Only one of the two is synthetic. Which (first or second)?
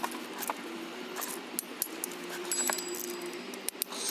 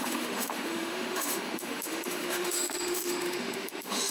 second